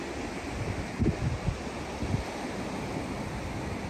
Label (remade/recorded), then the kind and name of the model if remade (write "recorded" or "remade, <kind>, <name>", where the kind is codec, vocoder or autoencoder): recorded